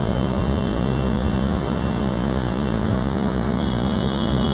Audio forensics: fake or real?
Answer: fake